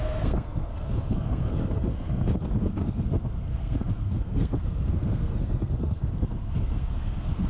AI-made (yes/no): yes